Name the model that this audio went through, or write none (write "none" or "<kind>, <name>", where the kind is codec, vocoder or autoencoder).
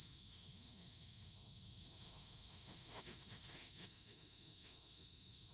autoencoder, DAC-VAE